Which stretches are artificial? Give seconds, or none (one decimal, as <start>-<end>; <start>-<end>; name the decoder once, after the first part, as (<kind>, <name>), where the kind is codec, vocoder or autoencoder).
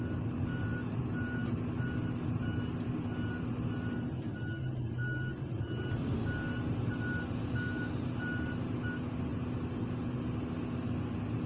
none